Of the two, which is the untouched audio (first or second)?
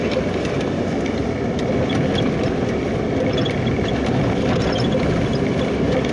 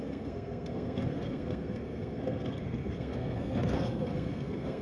first